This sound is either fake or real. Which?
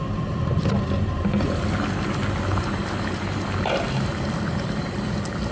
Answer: real